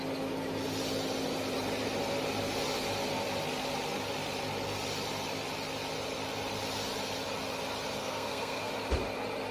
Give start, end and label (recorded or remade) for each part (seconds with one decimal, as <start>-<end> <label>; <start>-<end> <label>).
0.0-8.0 recorded; 8.0-8.7 remade; 8.7-9.5 recorded